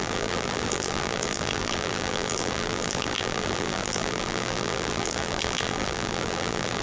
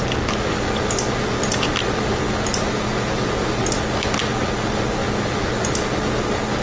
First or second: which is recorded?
second